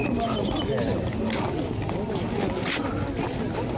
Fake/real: real